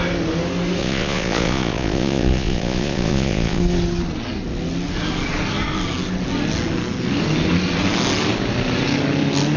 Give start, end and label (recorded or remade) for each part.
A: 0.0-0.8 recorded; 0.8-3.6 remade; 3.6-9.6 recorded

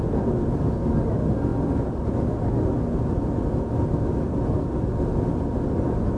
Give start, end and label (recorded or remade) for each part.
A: 0.0-6.2 recorded